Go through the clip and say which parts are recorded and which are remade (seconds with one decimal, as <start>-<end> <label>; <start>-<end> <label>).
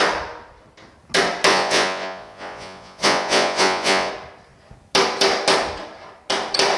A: 0.0-1.5 recorded; 1.5-4.1 remade; 4.1-6.8 recorded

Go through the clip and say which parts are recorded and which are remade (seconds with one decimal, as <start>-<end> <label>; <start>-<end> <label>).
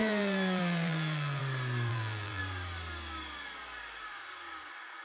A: 0.0-1.4 remade; 1.4-1.9 recorded; 1.9-2.4 remade; 2.4-5.0 recorded